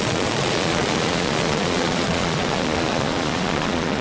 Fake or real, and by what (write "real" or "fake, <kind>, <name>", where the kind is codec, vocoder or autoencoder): fake, vocoder, Vocos